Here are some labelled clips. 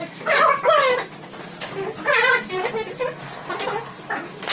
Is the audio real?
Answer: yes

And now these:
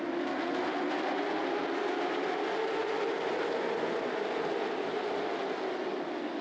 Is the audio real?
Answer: yes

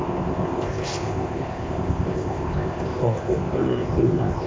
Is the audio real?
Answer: no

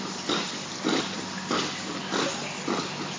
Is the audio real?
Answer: yes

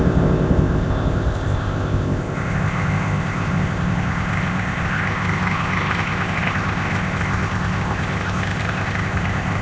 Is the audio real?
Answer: no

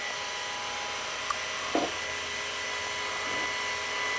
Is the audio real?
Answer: yes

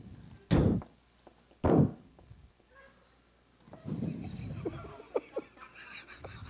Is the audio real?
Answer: yes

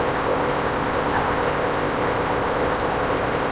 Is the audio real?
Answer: no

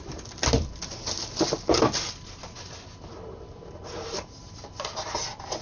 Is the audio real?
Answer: yes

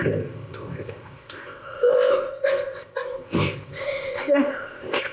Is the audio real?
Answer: no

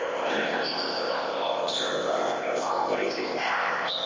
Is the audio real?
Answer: no